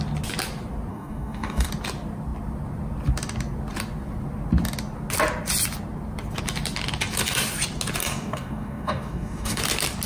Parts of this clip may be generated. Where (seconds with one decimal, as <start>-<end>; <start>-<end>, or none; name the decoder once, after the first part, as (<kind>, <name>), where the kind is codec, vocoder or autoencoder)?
0.9-1.7 (codec, DAC); 8.0-9.6